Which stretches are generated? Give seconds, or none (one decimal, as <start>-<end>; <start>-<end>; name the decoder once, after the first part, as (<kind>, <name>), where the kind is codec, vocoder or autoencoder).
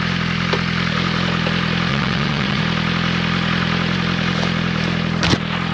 1.9-2.6 (vocoder, WaveNeXt)